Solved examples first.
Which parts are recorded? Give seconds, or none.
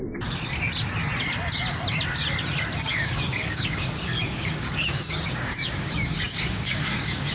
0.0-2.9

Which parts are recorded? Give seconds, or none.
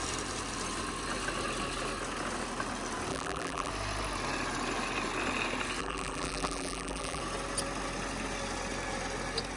0.0-3.1; 3.7-5.8; 7.2-9.6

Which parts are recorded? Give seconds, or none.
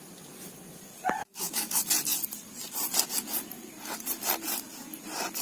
0.0-1.2; 1.7-5.4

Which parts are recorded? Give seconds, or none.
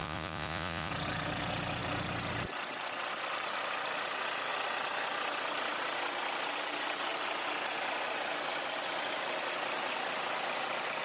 0.9-11.0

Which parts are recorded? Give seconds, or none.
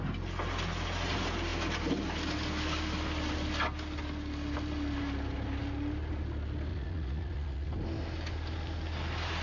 0.0-6.7; 7.7-9.4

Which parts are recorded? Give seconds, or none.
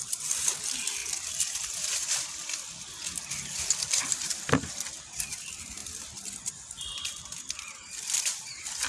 0.0-1.0; 5.1-5.8; 8.4-8.9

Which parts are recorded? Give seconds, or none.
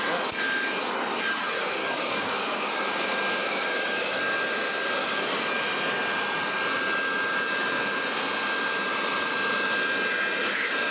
0.0-1.8; 2.8-3.4; 4.2-5.0; 5.5-10.9